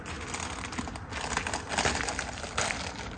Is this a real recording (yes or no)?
yes